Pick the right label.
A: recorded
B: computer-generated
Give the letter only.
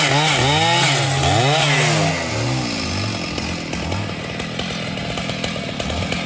A